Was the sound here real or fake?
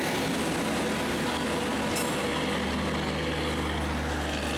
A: real